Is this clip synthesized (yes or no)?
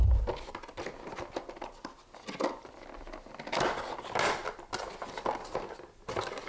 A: no